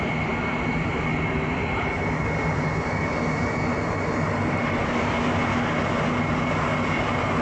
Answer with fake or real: real